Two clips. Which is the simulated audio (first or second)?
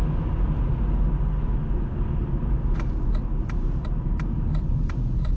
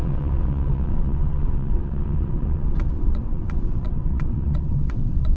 second